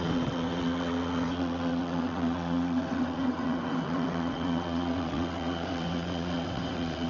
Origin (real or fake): fake